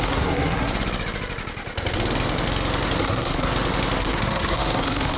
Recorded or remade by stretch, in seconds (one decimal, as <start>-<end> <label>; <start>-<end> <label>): 0.0-0.7 remade; 0.7-3.0 recorded; 3.0-3.5 remade; 3.5-4.0 recorded; 4.0-5.2 remade